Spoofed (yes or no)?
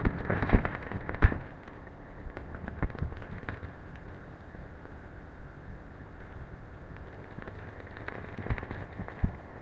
yes